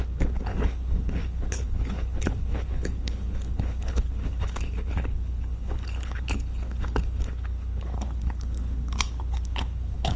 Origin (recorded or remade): remade